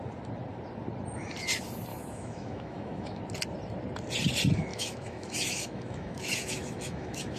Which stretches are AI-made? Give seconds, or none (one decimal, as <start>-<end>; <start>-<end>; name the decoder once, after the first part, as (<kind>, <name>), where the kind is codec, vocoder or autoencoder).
1.9-3.2 (autoencoder, DAC-VAE); 4.7-7.4